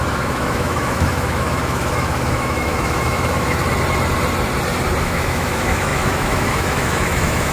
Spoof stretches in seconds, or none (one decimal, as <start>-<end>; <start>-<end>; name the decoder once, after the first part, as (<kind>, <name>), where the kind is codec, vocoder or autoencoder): 0.0-3.6 (autoencoder, DAC-VAE); 5.0-7.5